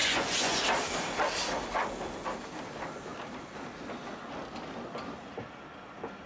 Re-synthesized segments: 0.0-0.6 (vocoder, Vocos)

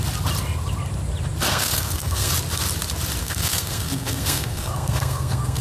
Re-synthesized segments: 1.5-2.3 (codec, SNAC); 3.2-5.6

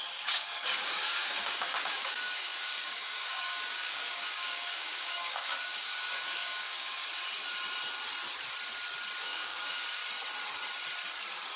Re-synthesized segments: 0.0-7.0 (codec, DAC); 9.2-10.0

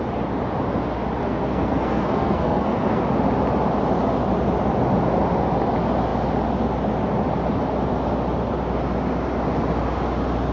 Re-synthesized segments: 1.2-3.0 (codec, SNAC)